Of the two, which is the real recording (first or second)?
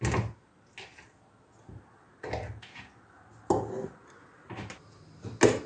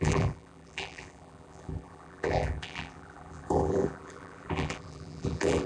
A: first